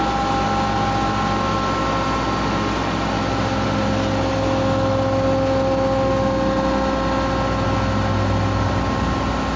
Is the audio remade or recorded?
recorded